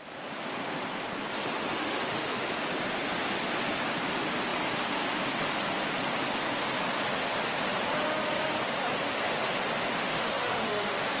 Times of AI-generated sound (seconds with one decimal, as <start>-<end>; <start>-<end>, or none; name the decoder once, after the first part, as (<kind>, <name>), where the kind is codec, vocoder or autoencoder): 1.7-2.5 (autoencoder, DAC-VAE); 9.9-11.2